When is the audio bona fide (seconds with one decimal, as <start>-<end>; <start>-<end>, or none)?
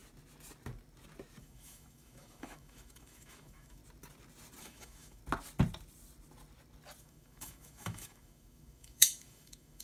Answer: 0.0-1.4; 3.8-4.6; 5.2-7.0